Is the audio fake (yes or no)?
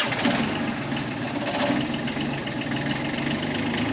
no